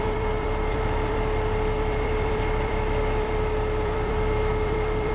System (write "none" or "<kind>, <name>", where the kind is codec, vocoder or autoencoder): vocoder, BigVGAN v2